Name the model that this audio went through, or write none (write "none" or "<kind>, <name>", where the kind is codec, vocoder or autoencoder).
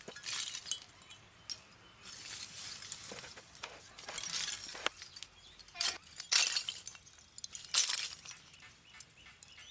none